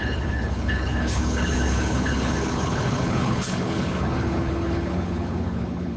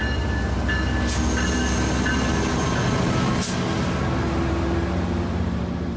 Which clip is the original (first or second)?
second